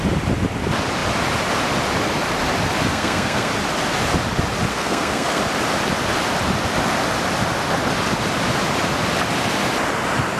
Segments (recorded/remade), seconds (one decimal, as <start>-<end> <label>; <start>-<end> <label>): 0.0-2.9 recorded; 2.9-3.5 remade; 3.5-4.7 recorded; 4.7-5.4 remade; 5.4-10.4 recorded